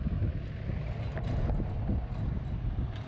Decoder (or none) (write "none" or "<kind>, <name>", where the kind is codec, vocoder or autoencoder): none